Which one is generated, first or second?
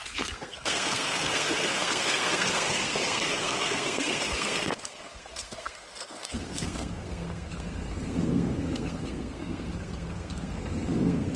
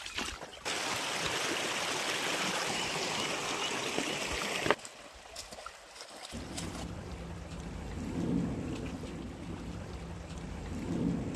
first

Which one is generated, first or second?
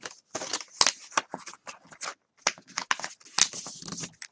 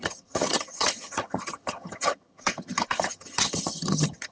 second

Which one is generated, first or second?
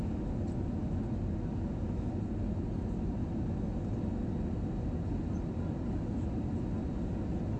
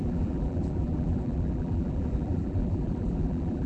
second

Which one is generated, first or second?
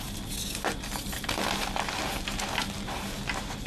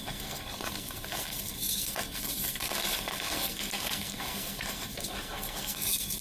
second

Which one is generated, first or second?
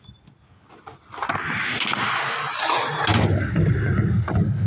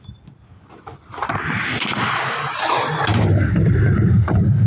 second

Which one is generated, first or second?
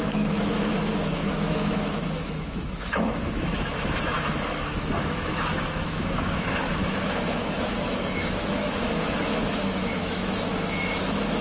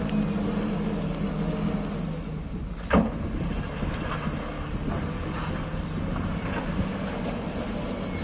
first